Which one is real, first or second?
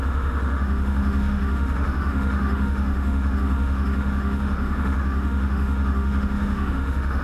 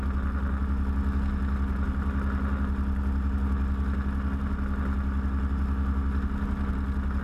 second